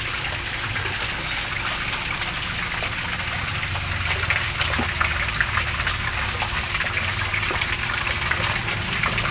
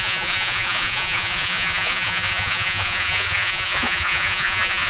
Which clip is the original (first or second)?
first